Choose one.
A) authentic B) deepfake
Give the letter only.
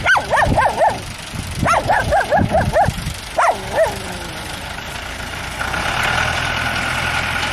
A